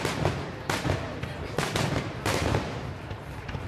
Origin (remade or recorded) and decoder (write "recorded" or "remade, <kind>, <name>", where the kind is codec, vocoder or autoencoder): remade, vocoder, BigVGAN v2